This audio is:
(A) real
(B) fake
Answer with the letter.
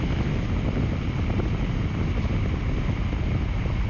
A